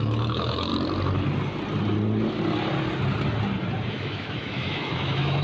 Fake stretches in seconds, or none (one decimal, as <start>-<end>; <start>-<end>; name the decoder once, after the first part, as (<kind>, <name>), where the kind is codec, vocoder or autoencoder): 0.0-0.7 (autoencoder, DAC-VAE); 3.9-5.4